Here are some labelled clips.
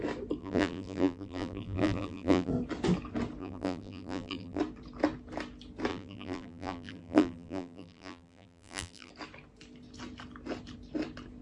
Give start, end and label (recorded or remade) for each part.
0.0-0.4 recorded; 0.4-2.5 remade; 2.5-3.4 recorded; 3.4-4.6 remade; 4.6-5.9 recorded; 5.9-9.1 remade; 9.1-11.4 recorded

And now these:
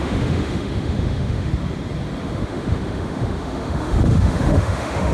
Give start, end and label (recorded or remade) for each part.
0.0-1.5 remade; 1.5-2.2 recorded; 2.2-5.1 remade

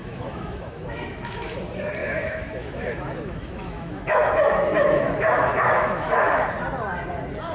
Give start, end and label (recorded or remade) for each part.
0.0-1.6 remade; 1.6-2.0 recorded; 2.0-6.5 remade; 6.5-7.5 recorded

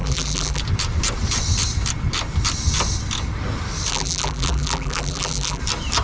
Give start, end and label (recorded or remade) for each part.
0.0-0.6 remade; 0.6-3.9 recorded; 3.9-5.6 remade; 5.6-6.0 recorded

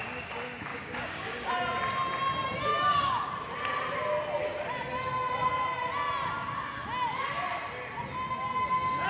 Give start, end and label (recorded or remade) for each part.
0.0-0.7 recorded; 0.7-1.5 remade; 1.5-2.7 recorded; 2.7-3.3 remade; 3.3-9.1 recorded

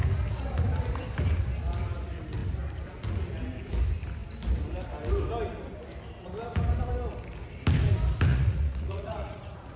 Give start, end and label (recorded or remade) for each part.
0.0-8.3 recorded; 8.3-9.8 remade